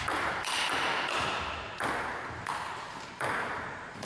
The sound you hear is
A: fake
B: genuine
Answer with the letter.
B